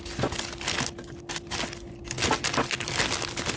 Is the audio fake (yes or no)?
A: no